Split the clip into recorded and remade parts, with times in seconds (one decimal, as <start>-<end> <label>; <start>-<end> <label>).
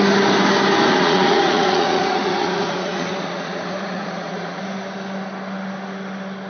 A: 0.0-0.9 recorded; 0.9-4.6 remade; 4.6-6.5 recorded